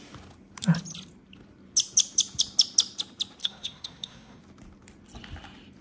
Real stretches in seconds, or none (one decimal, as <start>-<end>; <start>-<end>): 0.0-3.4; 4.4-5.8